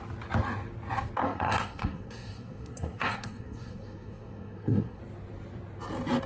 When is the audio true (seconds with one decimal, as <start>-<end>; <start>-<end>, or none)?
0.0-1.2; 5.0-6.3